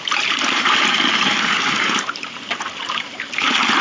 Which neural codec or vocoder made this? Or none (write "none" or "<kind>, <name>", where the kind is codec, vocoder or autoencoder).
vocoder, BigVGAN v2